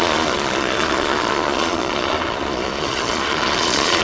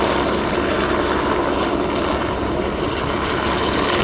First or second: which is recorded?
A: second